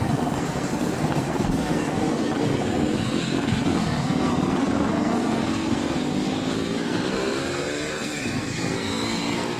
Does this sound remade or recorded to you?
remade